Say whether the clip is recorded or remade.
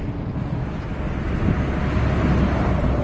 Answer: recorded